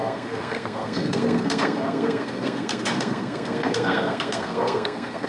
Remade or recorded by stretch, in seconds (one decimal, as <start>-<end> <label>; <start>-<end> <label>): 0.0-5.3 remade